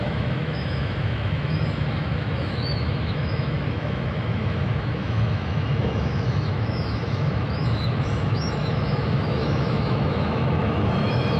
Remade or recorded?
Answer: remade